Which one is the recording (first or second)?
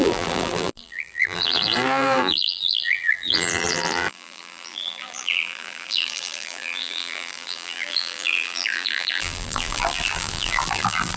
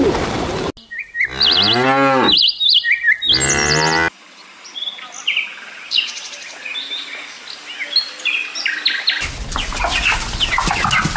second